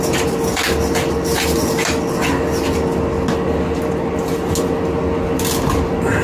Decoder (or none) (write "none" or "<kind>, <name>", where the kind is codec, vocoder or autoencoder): none